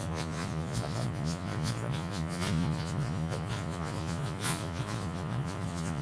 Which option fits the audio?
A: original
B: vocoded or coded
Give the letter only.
B